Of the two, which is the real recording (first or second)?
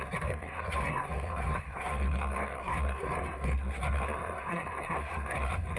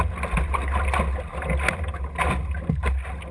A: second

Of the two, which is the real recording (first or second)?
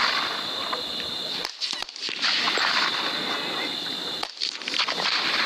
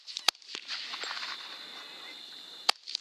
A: second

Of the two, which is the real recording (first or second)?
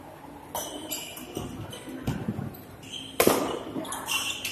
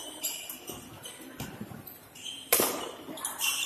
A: first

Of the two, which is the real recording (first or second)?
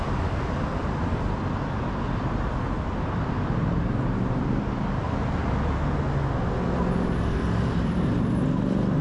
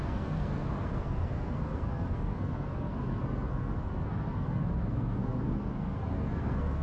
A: first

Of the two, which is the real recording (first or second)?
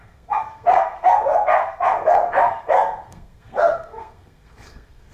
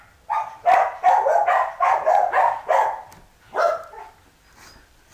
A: second